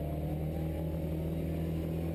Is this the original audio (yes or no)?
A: yes